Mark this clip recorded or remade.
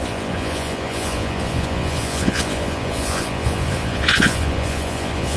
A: remade